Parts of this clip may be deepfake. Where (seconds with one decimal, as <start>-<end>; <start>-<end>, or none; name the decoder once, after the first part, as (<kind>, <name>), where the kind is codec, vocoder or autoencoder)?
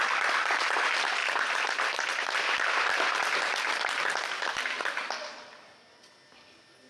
none